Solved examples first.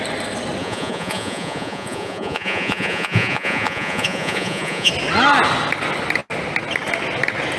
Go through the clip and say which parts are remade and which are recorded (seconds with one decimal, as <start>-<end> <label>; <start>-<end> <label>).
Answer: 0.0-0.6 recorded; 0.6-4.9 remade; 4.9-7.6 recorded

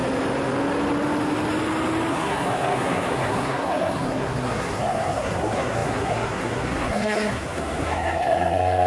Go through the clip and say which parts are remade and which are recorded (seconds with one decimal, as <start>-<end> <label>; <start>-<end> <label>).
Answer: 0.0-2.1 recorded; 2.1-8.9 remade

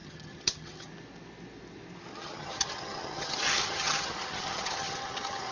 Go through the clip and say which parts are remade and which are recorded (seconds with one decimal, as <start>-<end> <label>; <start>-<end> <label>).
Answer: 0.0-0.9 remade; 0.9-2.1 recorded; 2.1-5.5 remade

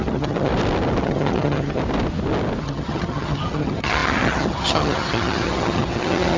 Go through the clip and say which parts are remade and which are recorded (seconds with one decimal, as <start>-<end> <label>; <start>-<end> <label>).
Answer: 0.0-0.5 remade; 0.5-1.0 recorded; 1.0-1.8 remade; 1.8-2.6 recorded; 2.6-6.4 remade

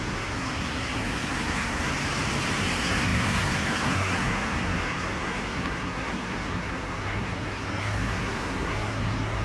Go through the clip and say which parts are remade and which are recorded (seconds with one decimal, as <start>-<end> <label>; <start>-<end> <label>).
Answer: 0.0-1.9 remade; 1.9-2.6 recorded; 2.6-9.4 remade

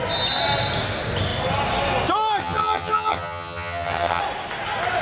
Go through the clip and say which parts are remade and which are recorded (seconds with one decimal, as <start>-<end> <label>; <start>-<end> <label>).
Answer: 0.0-2.4 recorded; 2.4-4.2 remade; 4.2-5.0 recorded

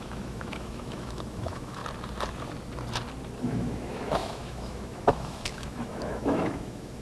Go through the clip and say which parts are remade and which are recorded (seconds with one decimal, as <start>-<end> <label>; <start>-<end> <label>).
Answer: 0.0-1.8 remade; 1.8-3.4 recorded; 3.4-7.0 remade

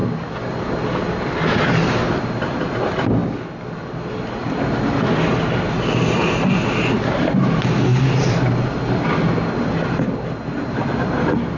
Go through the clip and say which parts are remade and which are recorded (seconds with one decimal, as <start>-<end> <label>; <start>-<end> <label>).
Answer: 0.0-11.6 recorded